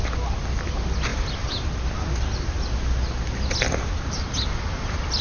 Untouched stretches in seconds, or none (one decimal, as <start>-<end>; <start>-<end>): 0.0-5.2